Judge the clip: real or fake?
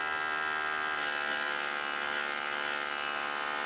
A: real